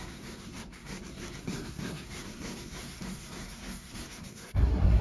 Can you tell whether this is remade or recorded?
remade